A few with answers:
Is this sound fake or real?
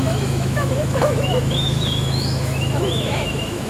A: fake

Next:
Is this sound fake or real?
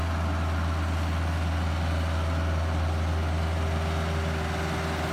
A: real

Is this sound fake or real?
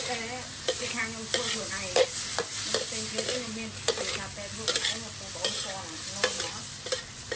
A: real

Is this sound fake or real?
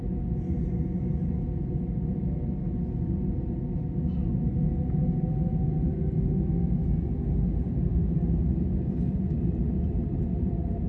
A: real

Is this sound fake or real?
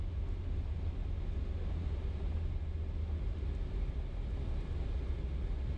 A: real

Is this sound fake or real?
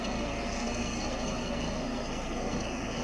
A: fake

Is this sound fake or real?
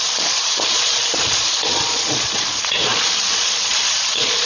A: fake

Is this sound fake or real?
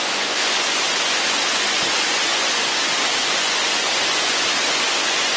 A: fake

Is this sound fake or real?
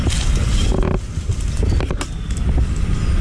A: real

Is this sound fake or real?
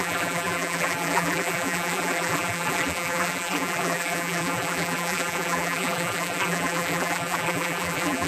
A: fake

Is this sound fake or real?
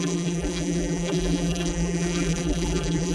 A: fake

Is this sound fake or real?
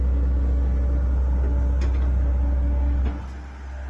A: real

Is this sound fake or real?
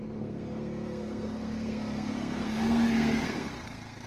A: fake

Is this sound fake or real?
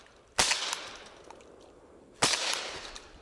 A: real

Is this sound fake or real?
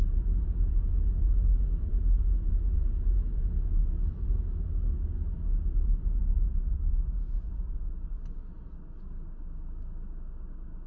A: real